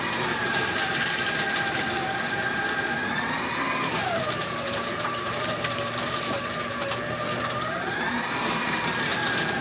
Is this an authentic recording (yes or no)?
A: no